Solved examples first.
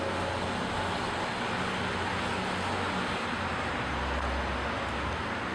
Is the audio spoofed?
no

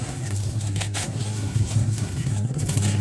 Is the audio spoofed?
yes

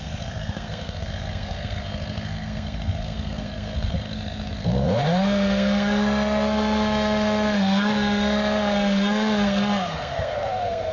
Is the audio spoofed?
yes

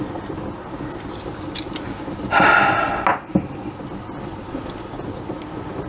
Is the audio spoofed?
no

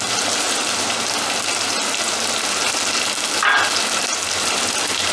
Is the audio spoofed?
no